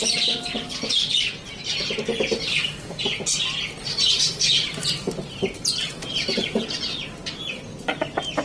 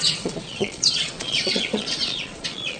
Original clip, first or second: first